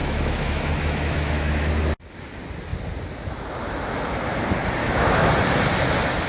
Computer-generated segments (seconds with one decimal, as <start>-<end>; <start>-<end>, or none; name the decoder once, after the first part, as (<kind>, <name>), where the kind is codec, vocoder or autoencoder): 0.0-1.7 (autoencoder, DAC-VAE); 4.8-5.3